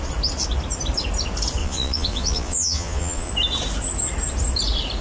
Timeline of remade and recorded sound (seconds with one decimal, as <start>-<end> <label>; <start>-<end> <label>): 0.0-1.6 recorded; 1.6-3.3 remade; 3.3-5.0 recorded